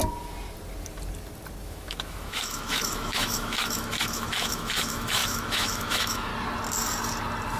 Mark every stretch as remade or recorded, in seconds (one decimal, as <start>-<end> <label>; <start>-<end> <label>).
0.0-1.6 recorded; 1.6-6.3 remade; 6.3-7.6 recorded